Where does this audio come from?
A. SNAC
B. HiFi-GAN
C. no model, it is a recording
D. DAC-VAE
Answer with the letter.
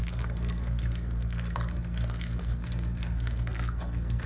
A